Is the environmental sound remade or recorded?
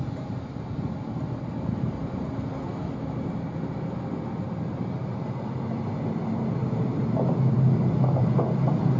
recorded